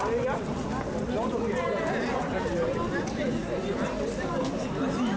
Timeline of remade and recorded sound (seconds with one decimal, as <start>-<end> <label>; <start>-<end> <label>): 0.0-5.2 recorded